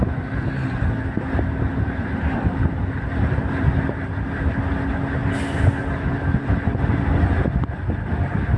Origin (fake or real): real